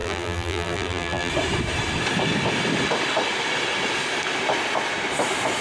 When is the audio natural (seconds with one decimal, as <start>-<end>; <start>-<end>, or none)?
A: 1.3-5.6